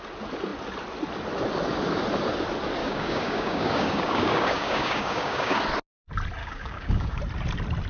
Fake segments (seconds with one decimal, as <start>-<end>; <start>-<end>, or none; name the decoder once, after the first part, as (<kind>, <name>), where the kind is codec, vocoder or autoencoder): 2.8-5.6 (codec, DAC); 6.4-7.2